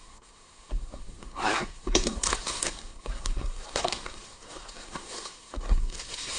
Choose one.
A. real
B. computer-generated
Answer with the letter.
B